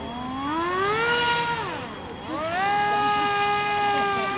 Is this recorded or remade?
recorded